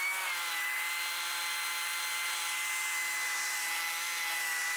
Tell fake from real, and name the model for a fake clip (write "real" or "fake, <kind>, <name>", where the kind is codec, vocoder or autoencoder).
real